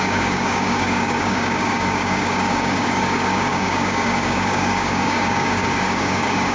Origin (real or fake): fake